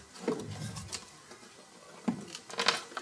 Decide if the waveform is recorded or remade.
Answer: recorded